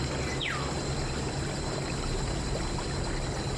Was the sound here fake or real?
real